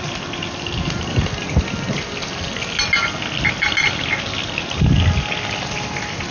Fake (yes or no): no